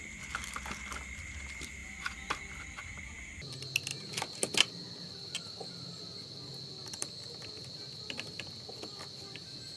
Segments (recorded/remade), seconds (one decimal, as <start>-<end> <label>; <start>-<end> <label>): 0.0-9.8 recorded